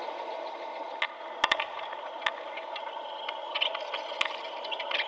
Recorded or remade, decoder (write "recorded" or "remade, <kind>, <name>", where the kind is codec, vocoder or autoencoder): recorded